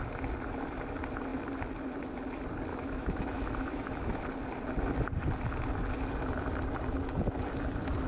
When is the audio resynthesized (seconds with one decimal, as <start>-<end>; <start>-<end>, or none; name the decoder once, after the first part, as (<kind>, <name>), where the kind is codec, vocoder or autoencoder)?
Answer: 2.7-4.2 (autoencoder, DAC-VAE)